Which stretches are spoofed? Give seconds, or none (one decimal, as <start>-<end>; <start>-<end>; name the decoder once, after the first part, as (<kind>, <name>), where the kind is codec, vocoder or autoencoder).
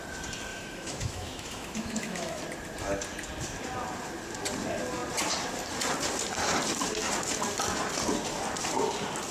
0.5-2.4 (autoencoder, DAC-VAE)